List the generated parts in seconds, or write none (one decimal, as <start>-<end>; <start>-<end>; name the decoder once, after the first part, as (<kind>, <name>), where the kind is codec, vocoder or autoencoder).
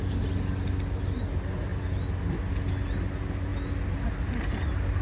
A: none